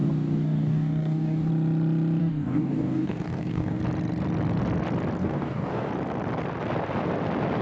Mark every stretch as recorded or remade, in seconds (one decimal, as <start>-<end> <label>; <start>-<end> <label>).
0.0-1.5 remade; 1.5-2.2 recorded; 2.2-3.8 remade; 3.8-5.2 recorded; 5.2-5.9 remade; 5.9-7.6 recorded